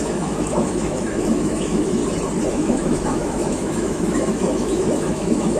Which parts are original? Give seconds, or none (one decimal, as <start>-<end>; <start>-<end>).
2.0-2.5